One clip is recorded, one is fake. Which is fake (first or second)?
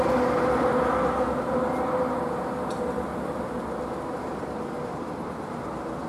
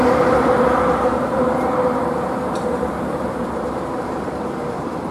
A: second